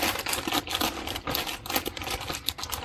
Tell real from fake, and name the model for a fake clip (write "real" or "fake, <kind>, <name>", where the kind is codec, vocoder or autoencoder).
real